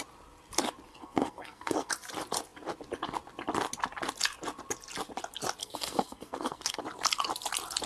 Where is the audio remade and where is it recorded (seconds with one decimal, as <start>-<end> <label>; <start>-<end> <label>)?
0.0-0.9 recorded; 0.9-1.9 remade; 1.9-5.6 recorded; 5.6-6.8 remade; 6.8-7.9 recorded